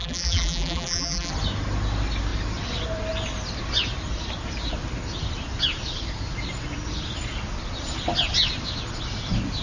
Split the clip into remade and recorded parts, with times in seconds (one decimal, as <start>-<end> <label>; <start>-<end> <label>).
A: 0.0-1.3 remade; 1.3-9.6 recorded